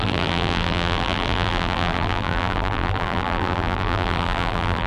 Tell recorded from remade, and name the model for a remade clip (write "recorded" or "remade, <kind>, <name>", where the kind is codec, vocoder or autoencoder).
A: remade, vocoder, BigVGAN v2